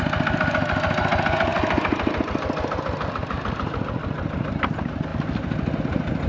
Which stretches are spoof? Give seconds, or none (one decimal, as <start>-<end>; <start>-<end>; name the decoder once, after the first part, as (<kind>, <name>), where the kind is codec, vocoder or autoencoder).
none